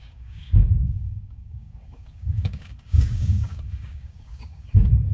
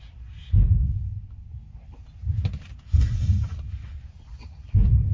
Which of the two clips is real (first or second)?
second